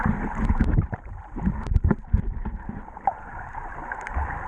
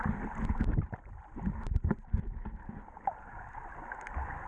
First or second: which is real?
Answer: second